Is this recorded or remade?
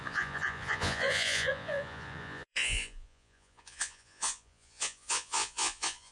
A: remade